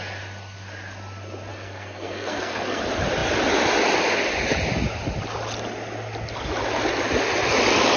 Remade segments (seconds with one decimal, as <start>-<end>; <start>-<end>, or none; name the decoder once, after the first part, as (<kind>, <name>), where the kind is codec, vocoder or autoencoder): 1.5-2.8 (codec, SNAC)